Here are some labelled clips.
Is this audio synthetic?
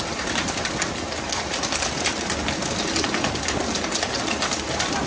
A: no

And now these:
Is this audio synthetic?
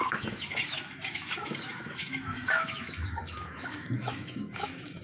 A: yes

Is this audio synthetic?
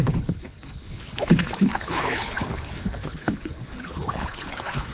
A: yes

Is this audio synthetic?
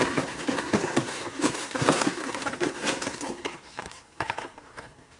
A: yes